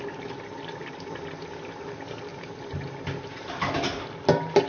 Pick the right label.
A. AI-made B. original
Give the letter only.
B